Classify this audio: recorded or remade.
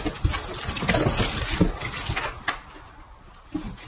recorded